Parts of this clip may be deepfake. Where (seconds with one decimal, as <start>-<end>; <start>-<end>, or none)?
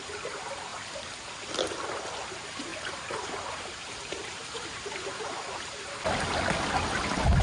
2.7-4.8